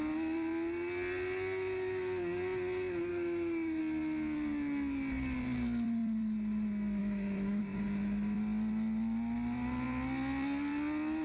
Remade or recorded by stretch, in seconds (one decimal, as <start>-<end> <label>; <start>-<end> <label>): 0.0-3.1 recorded; 3.1-3.8 remade; 3.8-7.0 recorded; 7.0-7.6 remade; 7.6-11.2 recorded